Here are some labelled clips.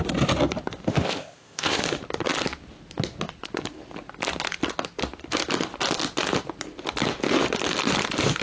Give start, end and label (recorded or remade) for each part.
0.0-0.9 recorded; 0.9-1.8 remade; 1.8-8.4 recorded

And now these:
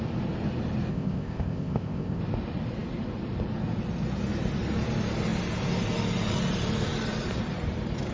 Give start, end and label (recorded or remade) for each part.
0.0-0.9 recorded; 0.9-2.2 remade; 2.2-8.1 recorded

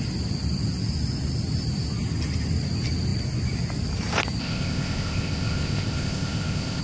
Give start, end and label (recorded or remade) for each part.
0.0-4.4 recorded; 4.4-6.8 remade

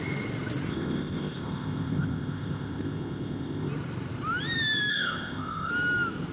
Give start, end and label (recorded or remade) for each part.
0.0-0.7 recorded; 0.7-3.7 remade; 3.7-4.9 recorded; 4.9-5.7 remade; 5.7-6.3 recorded